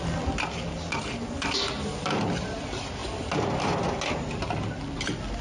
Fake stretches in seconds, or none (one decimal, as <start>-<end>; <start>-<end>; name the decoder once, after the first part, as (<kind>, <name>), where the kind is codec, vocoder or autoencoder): none